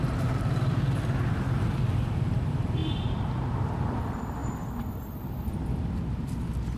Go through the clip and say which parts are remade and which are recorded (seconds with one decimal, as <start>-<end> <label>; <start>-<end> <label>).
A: 0.0-2.8 remade; 2.8-3.6 recorded; 3.6-6.8 remade